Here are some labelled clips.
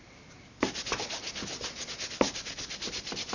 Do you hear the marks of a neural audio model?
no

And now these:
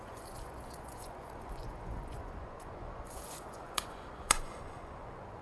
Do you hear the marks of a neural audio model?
yes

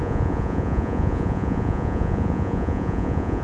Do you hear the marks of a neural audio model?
yes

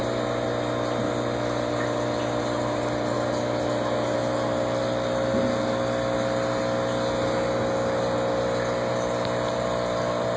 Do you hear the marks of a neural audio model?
no